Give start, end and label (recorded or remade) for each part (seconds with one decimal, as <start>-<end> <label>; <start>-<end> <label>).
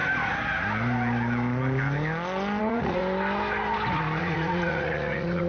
0.0-2.6 recorded; 2.6-3.0 remade; 3.0-4.2 recorded; 4.2-5.5 remade